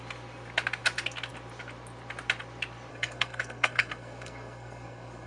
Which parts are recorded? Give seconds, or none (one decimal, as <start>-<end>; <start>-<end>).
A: 0.0-2.9